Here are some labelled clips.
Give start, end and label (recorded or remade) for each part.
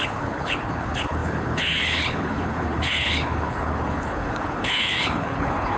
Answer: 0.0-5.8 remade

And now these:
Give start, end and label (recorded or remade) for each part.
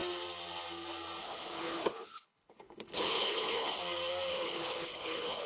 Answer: 0.0-1.2 recorded; 1.2-3.8 remade; 3.8-4.3 recorded; 4.3-5.5 remade